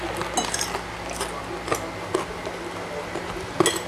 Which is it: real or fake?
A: real